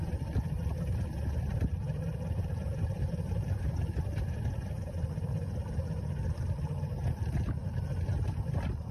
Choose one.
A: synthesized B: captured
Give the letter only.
B